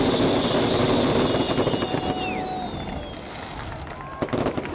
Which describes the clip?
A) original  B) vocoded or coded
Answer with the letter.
A